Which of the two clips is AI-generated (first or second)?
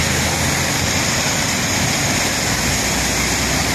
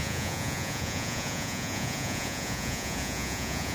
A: second